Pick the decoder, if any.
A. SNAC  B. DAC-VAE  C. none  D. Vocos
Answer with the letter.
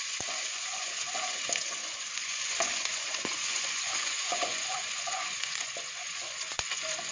D